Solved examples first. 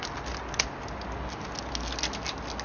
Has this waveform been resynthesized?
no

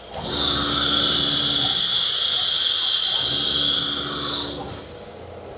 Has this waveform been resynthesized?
no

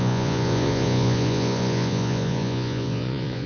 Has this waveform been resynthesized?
yes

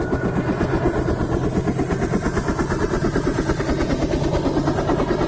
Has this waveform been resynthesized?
no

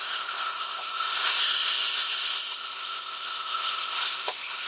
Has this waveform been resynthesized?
yes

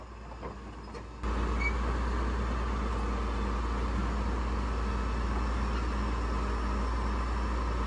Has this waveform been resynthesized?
no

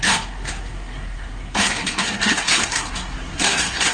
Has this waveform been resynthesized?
yes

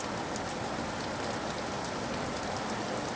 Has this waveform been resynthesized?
no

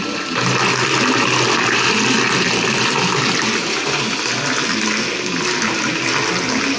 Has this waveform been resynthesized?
no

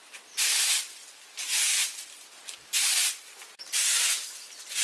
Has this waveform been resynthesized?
no